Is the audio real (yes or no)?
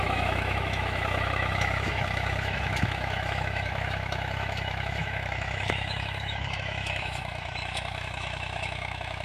no